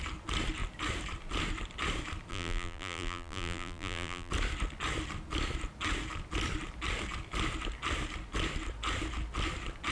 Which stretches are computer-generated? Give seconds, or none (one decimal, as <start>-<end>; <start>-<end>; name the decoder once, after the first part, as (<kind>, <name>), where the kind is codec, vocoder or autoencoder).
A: 2.3-4.3 (vocoder, BigVGAN v2)